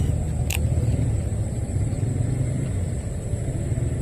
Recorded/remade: remade